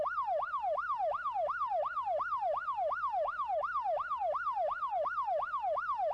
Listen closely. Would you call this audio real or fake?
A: real